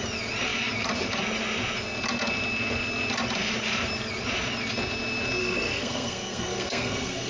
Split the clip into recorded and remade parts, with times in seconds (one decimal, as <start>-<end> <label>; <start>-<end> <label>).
0.0-5.4 recorded; 5.4-7.3 remade